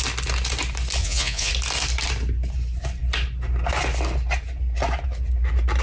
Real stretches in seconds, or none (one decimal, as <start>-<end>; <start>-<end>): 0.0-1.0; 1.5-5.8